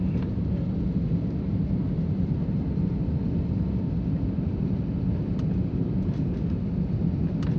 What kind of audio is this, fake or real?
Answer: real